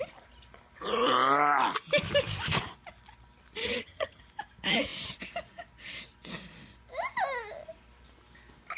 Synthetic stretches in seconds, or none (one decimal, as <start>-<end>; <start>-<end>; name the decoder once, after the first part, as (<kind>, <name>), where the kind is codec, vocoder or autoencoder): 3.6-4.2 (vocoder, HiFi-GAN)